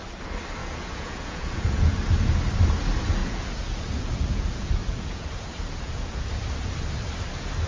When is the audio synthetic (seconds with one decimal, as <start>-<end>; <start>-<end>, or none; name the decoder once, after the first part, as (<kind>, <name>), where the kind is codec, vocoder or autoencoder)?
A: 0.6-1.9 (vocoder, Vocos); 3.2-6.3